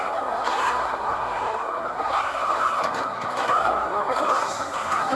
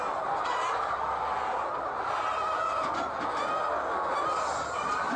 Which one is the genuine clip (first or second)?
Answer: second